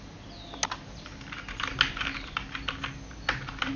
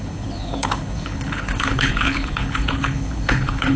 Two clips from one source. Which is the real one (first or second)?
first